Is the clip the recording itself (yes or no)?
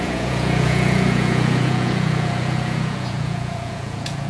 no